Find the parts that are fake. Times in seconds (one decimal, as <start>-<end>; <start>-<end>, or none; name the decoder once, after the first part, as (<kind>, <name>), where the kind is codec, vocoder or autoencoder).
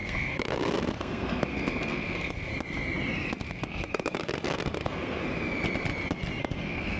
0.0-2.5 (codec, SNAC); 3.5-5.2; 6.4-7.0